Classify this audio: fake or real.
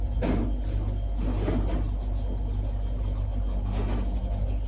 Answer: real